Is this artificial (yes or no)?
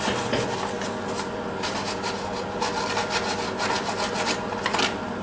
no